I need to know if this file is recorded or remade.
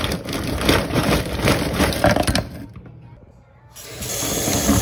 remade